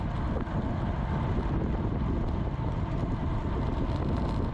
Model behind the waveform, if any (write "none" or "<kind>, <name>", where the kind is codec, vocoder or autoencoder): none